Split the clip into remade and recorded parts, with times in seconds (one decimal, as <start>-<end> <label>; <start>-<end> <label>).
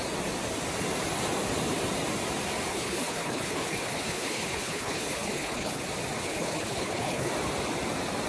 0.0-2.7 recorded; 2.7-5.8 remade; 5.8-6.2 recorded; 6.2-7.3 remade; 7.3-8.3 recorded